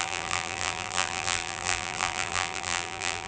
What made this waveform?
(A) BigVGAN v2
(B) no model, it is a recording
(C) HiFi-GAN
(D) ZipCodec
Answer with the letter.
A